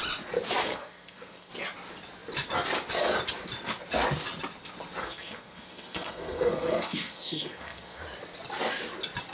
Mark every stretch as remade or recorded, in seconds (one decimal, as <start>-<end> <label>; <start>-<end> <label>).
0.0-0.6 recorded; 0.6-1.5 remade; 1.5-5.0 recorded; 5.0-8.0 remade; 8.0-9.3 recorded